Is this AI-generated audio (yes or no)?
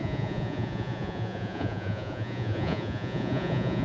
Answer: yes